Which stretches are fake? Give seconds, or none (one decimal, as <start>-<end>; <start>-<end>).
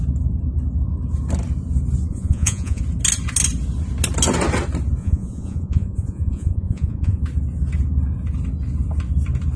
2.1-2.8; 5.0-7.2